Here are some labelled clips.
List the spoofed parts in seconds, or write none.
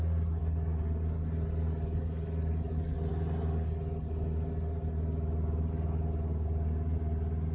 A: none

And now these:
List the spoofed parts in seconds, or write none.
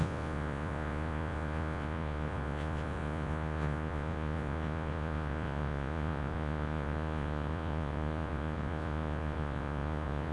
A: 0.0-10.3 (vocoder, Vocos)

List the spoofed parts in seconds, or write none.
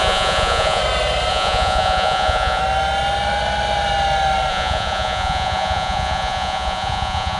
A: 0.0-0.8 (vocoder, Vocos); 1.3-2.6; 4.5-7.4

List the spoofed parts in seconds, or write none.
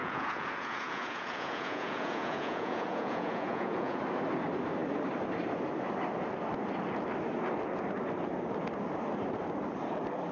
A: 0.0-4.0 (vocoder, Vocos)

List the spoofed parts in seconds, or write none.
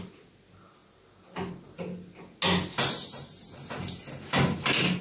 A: none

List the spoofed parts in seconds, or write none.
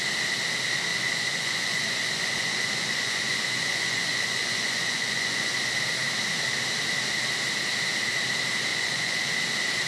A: 0.9-5.5 (vocoder, Vocos); 8.7-9.3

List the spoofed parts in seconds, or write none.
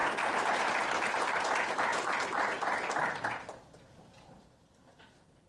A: none